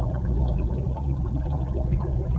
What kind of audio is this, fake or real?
fake